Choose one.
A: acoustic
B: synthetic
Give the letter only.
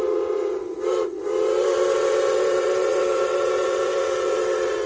B